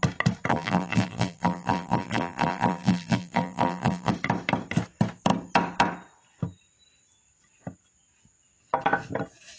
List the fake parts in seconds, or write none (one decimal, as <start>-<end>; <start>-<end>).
0.5-4.1